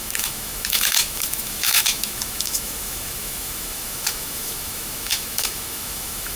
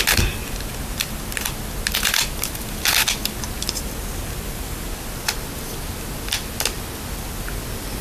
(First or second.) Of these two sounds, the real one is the second